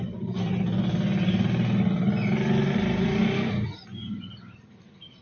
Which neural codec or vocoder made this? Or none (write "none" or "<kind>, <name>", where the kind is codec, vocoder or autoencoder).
none